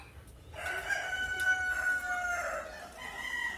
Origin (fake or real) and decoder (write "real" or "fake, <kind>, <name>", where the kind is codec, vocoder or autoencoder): real